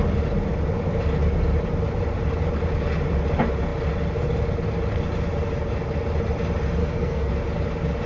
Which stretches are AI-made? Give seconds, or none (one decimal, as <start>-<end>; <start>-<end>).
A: 6.8-7.3